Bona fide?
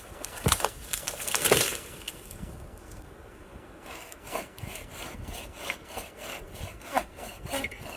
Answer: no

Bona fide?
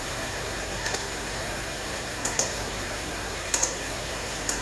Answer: no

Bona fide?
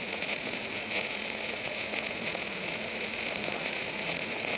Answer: no